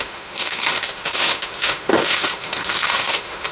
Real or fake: fake